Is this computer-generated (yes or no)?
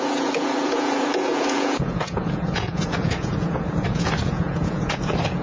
yes